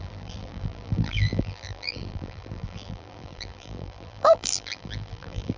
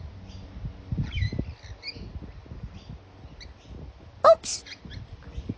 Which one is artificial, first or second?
first